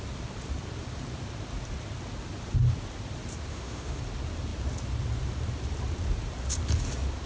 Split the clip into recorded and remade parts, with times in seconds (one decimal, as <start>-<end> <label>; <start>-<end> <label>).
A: 0.0-3.5 recorded; 3.5-4.0 remade; 4.0-7.3 recorded

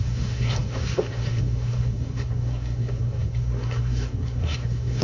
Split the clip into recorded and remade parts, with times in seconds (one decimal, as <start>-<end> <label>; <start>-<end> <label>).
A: 0.0-5.0 remade

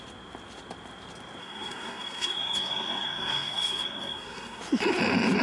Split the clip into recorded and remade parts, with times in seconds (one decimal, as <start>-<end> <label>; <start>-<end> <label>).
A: 0.0-1.4 recorded; 1.4-4.6 remade; 4.6-5.4 recorded

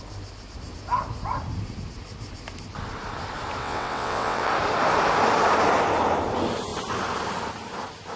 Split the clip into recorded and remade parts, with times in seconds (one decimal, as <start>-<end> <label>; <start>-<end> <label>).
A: 0.0-3.6 recorded; 3.6-4.5 remade; 4.5-8.2 recorded

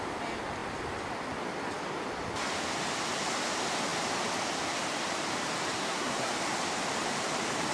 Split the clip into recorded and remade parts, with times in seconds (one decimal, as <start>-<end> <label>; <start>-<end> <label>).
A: 0.0-5.8 recorded; 5.8-6.3 remade; 6.3-7.7 recorded

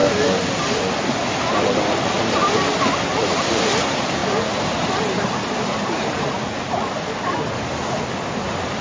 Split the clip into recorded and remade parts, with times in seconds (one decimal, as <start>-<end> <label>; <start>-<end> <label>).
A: 0.0-8.8 recorded

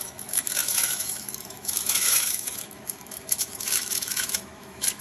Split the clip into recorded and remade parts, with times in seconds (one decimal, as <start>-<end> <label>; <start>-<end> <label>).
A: 0.0-5.0 remade

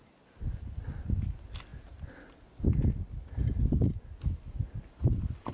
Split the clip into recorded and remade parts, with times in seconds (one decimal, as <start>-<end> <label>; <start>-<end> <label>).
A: 0.0-5.5 recorded